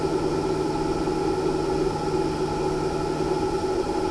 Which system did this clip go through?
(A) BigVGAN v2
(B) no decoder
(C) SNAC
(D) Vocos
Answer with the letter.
B